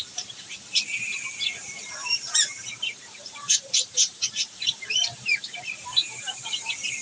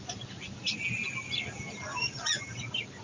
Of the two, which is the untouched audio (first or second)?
second